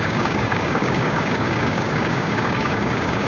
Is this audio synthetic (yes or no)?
yes